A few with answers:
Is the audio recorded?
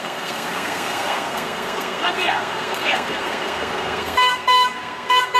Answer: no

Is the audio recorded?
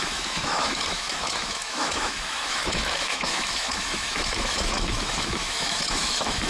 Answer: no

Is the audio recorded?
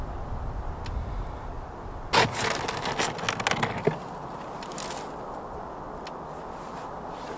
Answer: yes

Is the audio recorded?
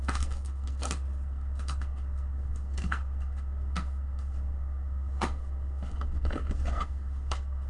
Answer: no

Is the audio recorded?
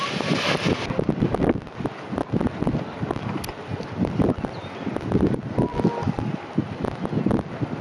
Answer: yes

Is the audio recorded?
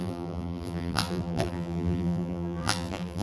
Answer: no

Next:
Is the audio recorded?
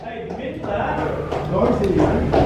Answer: yes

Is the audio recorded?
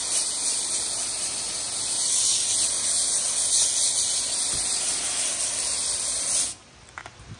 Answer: yes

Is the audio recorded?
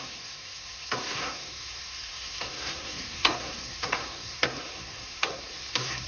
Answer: no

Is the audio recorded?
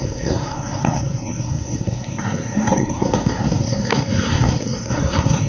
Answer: no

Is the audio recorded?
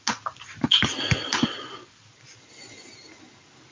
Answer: yes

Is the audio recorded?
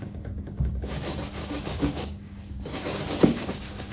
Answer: no